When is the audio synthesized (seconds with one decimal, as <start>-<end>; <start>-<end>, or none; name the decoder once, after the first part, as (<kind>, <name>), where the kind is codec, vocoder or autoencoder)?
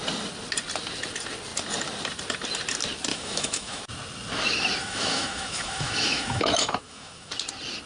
3.1-3.8 (autoencoder, DAC-VAE); 4.8-7.3